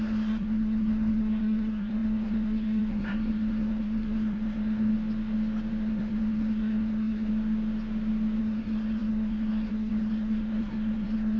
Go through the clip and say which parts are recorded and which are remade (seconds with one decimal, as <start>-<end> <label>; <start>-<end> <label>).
0.0-4.9 remade; 4.9-5.8 recorded; 5.8-7.3 remade; 7.3-8.4 recorded; 8.4-11.4 remade